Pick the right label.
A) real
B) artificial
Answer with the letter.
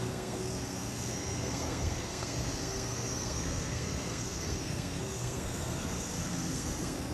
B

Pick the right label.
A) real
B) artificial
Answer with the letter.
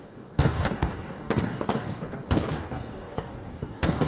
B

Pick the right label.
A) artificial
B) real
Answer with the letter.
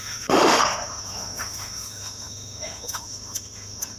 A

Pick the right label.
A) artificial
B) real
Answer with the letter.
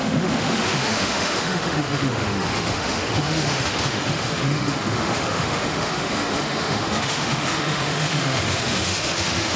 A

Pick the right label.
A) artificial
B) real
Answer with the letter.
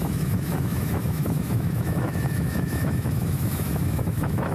A